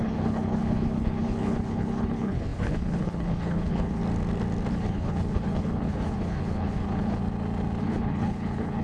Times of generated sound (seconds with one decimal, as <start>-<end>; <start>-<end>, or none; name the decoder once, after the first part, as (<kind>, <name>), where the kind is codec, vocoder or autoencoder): 0.0-4.0 (codec, HILCodec); 4.7-7.2; 7.8-8.8